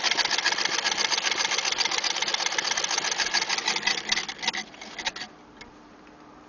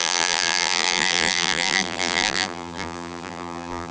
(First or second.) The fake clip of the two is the second